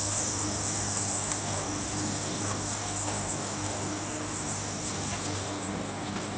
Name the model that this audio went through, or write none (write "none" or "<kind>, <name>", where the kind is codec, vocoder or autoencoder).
codec, DAC